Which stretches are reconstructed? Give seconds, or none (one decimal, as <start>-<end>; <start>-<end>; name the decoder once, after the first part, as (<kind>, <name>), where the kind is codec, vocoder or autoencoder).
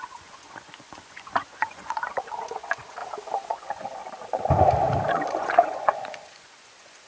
0.0-3.0 (vocoder, Vocos); 3.5-4.0; 5.1-7.1